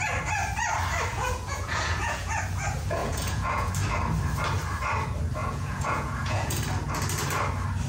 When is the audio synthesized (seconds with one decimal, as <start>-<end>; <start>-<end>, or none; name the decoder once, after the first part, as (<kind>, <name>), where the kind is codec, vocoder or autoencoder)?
1.1-2.3 (vocoder, Vocos); 3.0-3.7; 5.4-6.6